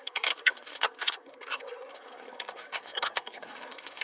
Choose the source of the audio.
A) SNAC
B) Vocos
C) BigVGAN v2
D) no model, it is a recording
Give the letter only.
A